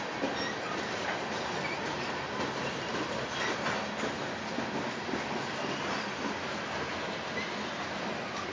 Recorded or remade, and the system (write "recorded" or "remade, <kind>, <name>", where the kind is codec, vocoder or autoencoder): recorded